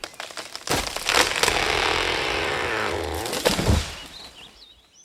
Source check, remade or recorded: recorded